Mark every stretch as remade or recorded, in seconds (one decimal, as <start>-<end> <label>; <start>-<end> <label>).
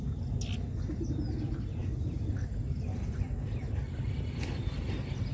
0.0-5.3 recorded